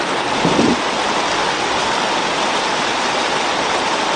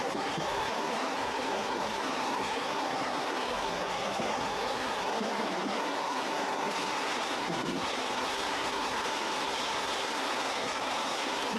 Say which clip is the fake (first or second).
second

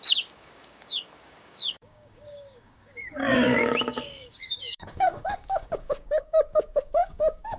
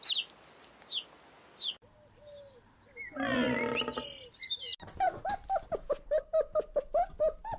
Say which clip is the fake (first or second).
first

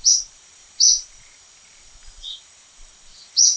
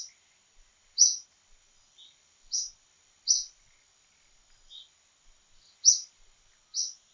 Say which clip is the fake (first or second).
first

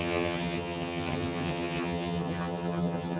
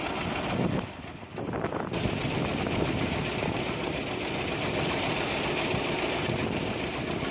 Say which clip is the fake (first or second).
first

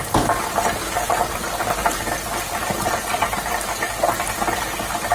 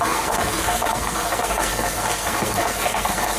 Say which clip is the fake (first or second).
second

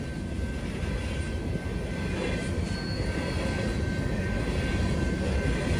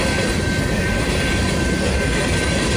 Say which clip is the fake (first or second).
second